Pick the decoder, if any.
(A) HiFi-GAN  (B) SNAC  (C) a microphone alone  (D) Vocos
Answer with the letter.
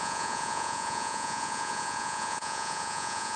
D